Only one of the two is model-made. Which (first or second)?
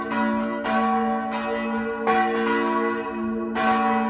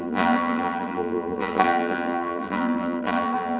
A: second